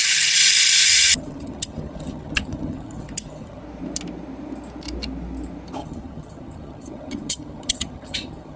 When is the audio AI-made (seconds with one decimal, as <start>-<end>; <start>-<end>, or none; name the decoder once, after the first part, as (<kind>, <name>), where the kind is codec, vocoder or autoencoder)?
0.9-3.6 (vocoder, HiFi-GAN); 5.8-8.6